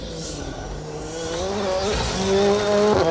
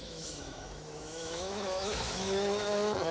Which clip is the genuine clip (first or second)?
first